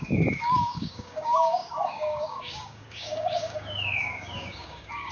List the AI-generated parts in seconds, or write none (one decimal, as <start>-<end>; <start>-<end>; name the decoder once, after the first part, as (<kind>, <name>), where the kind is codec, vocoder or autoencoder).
0.0-5.1 (codec, DAC)